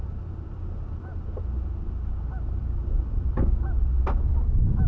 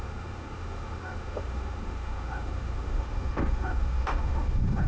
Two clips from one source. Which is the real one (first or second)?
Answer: first